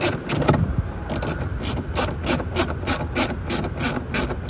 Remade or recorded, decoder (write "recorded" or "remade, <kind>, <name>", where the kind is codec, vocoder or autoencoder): recorded